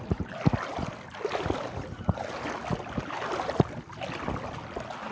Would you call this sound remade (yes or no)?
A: no